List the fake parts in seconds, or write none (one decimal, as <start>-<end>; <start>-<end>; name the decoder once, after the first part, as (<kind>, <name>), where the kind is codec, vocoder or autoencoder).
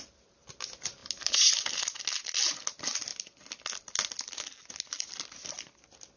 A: none